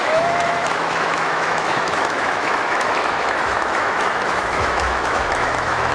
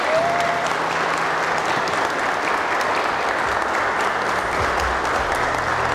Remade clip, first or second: first